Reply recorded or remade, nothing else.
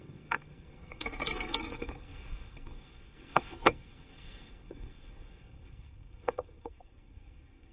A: remade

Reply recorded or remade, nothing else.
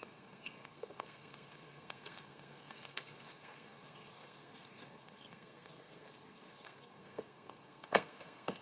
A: remade